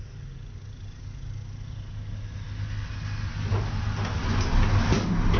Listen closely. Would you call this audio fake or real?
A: real